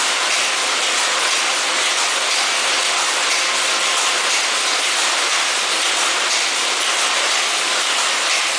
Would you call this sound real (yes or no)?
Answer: yes